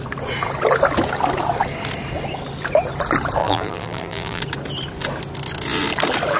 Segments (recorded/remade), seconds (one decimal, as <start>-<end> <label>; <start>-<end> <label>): 0.0-3.4 recorded; 3.4-4.4 remade; 4.4-6.4 recorded